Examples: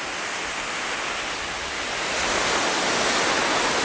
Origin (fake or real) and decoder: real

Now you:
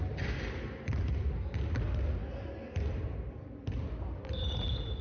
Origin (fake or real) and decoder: real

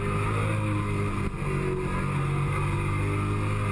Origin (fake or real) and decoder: real